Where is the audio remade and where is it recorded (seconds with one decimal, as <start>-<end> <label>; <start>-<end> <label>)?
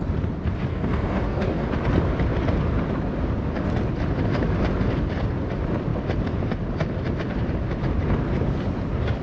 0.0-0.7 recorded; 0.7-1.7 remade; 1.7-9.2 recorded